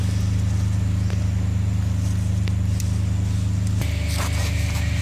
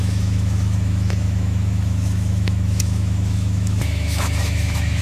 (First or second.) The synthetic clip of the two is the second